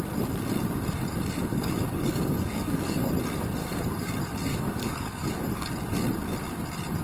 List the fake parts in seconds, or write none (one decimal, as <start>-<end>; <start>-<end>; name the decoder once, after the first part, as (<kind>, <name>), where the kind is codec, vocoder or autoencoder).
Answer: 1.4-3.1 (codec, DAC); 3.6-4.1; 4.5-5.7